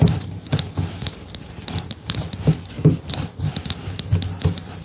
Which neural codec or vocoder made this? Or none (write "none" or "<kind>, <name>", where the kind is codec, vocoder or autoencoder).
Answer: none